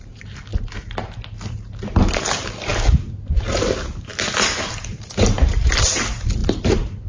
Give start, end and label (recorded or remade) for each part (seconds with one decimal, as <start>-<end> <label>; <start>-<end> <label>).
0.0-0.5 remade; 0.5-1.5 recorded; 1.5-2.7 remade; 2.7-3.2 recorded; 3.2-4.1 remade; 4.1-4.7 recorded; 4.7-7.1 remade